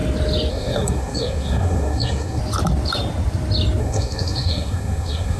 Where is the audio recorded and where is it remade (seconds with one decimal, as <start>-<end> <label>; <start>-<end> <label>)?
0.0-0.5 recorded; 0.5-2.4 remade; 2.4-3.8 recorded; 3.8-5.4 remade